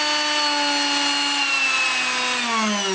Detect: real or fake real